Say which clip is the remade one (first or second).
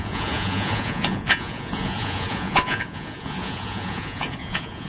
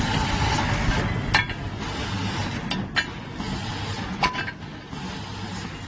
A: first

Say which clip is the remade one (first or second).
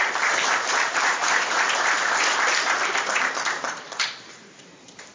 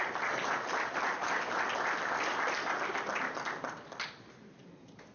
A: first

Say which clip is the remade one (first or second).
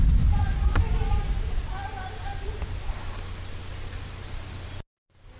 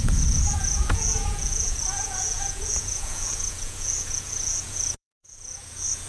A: second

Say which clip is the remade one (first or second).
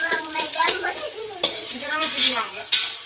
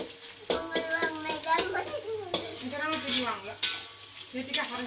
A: first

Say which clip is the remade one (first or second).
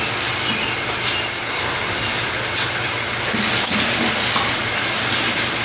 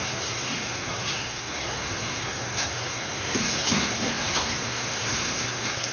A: second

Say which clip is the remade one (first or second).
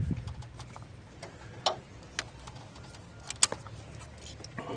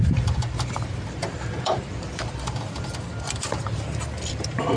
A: second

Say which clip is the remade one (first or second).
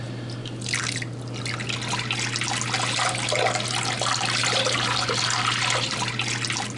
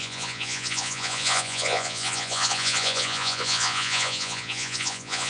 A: second